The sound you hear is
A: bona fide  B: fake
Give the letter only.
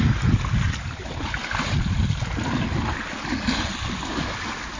A